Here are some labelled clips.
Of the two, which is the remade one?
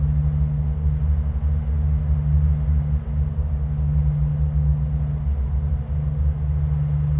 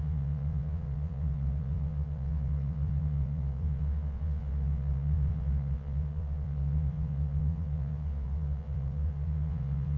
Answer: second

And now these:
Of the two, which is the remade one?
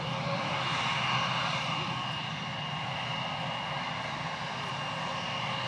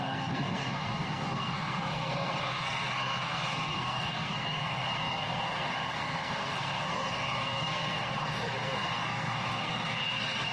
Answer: second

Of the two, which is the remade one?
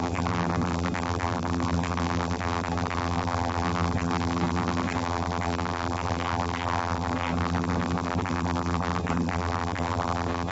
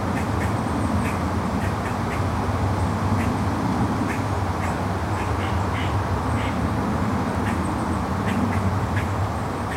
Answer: first